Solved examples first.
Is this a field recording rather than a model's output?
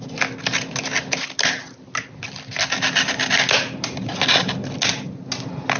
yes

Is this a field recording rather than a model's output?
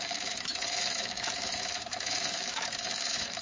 no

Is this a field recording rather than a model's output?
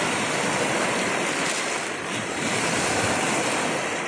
yes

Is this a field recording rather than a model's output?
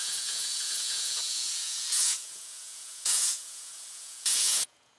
no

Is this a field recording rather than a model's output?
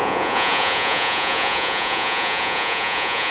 no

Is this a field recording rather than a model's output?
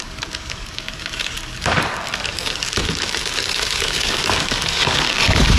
no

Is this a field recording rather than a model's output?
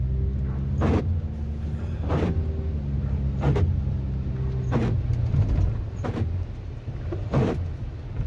yes